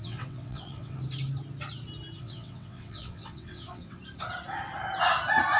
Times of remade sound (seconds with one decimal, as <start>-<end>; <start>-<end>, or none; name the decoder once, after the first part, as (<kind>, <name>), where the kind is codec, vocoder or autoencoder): 0.0-1.0 (vocoder, WaveNeXt); 2.2-4.0

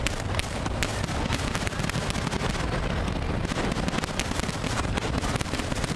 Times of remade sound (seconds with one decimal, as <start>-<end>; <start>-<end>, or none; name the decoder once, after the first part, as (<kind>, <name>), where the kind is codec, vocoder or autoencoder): 0.0-0.9 (vocoder, BigVGAN v2); 4.5-6.0

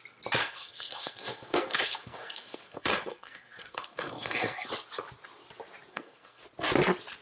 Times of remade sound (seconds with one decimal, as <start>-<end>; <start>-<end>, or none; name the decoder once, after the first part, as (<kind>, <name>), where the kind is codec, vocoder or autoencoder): 0.4-4.7 (codec, SNAC); 5.9-6.4

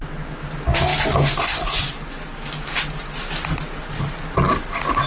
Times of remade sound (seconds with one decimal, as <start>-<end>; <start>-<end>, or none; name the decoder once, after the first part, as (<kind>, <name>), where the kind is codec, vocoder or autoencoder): none

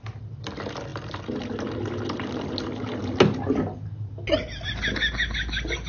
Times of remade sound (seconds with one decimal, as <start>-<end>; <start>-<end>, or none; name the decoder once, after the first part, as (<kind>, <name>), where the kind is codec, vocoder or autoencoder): none

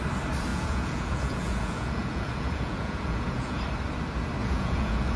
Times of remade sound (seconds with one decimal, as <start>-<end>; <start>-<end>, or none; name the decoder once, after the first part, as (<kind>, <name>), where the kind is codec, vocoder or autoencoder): 0.5-3.6 (vocoder, Vocos); 4.4-5.2

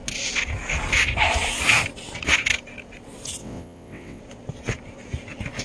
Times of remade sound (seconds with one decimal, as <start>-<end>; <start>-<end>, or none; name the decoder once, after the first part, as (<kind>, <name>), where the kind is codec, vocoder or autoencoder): 3.4-4.2 (vocoder, WaveNeXt)

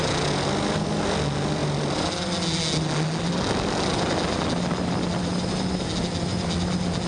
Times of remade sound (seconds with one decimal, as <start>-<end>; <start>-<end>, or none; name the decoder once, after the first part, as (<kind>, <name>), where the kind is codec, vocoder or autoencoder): none